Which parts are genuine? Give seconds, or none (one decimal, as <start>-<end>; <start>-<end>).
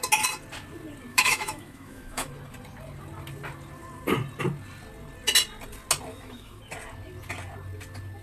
0.0-1.1; 2.3-6.1; 6.6-8.2